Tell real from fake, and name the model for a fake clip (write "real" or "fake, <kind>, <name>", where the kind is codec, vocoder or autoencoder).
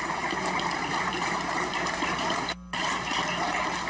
real